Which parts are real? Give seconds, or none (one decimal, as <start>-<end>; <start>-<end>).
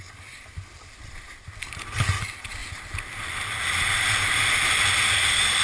0.0-5.6